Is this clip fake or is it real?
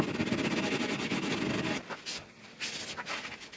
real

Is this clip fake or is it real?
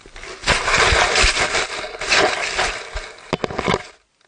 real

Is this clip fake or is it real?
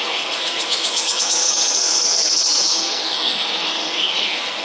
fake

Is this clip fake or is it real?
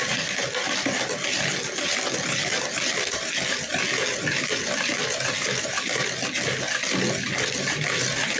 real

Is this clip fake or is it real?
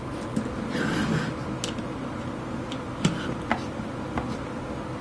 real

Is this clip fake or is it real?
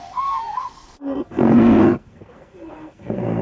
fake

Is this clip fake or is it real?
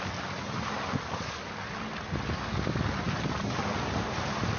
real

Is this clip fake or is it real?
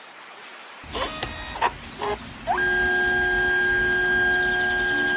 real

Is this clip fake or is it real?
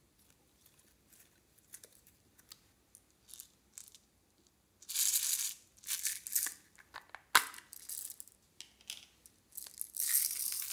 real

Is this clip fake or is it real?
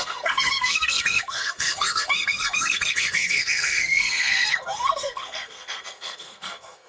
fake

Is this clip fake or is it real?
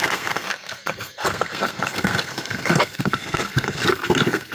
fake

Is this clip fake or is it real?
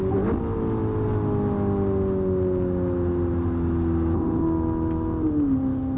real